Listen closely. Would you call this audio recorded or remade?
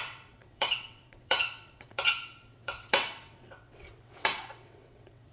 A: remade